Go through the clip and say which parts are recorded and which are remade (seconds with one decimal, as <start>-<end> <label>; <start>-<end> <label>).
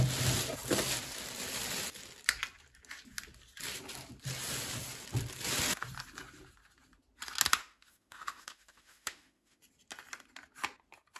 0.0-7.6 recorded; 7.6-9.6 remade; 9.6-11.2 recorded